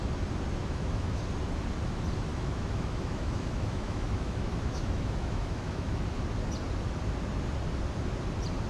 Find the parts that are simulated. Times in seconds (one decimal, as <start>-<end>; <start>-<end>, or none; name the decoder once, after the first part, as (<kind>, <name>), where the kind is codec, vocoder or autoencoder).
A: 0.6-1.2 (autoencoder, DAC-VAE); 2.3-6.0